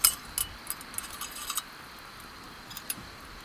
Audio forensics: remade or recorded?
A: recorded